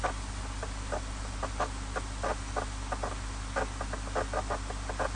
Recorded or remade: recorded